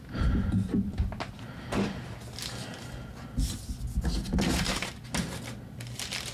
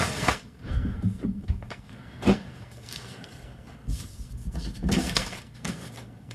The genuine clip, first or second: first